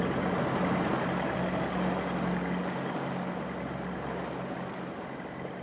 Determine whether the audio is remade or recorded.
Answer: recorded